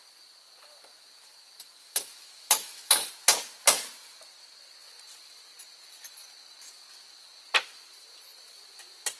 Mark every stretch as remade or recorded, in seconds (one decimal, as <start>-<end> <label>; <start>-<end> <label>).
0.0-1.8 recorded; 1.8-3.1 remade; 3.1-9.2 recorded